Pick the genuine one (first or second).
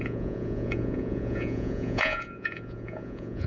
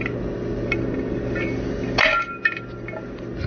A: second